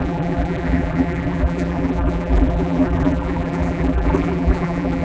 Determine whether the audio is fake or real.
fake